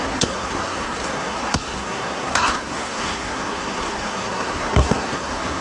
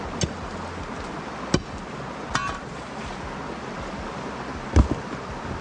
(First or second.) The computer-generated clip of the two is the first